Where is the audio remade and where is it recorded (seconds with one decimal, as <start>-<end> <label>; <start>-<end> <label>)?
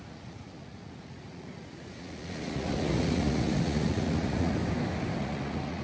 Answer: 0.0-4.6 remade; 4.6-5.2 recorded; 5.2-5.8 remade